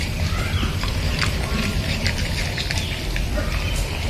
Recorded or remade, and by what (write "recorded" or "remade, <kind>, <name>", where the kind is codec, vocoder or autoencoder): remade, vocoder, BigVGAN v2